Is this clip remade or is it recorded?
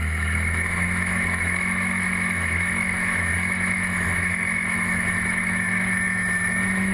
remade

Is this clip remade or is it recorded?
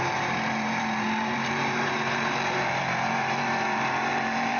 remade